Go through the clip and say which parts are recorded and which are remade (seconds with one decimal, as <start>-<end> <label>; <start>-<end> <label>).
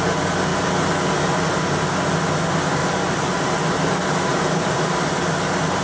0.0-2.8 recorded; 2.8-3.3 remade; 3.3-4.3 recorded; 4.3-4.9 remade; 4.9-5.8 recorded